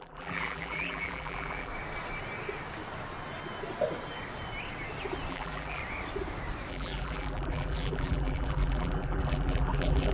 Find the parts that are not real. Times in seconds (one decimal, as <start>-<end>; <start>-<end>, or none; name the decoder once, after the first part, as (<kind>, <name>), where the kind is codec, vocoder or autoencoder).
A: 0.0-1.7 (vocoder, BigVGAN v2); 5.3-5.8; 6.7-10.1